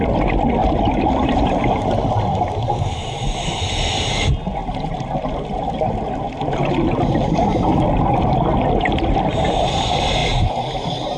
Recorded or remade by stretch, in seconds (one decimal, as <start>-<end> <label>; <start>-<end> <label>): 0.0-0.6 recorded; 0.6-1.8 remade; 1.8-4.6 recorded; 4.6-5.7 remade; 5.7-11.2 recorded